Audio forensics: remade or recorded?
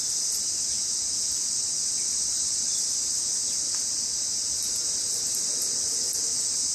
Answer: recorded